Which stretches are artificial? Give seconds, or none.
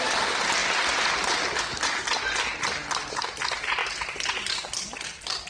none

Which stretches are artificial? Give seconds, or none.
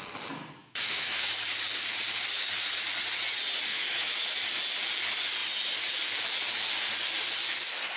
0.6-1.3; 3.7-4.3